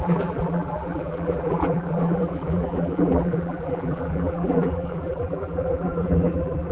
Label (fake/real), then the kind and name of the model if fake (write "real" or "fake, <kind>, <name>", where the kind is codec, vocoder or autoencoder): fake, vocoder, BigVGAN v2